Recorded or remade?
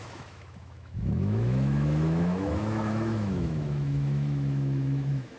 remade